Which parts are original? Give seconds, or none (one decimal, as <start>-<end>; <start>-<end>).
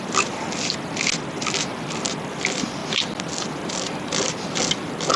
0.0-5.2